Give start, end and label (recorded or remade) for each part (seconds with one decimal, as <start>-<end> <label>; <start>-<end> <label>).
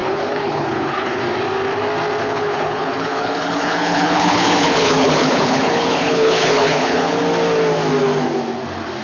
0.0-1.2 remade; 1.2-2.2 recorded; 2.2-7.2 remade; 7.2-9.0 recorded